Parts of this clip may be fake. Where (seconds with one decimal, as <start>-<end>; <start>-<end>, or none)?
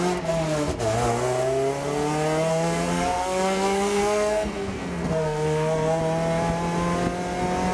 2.5-6.0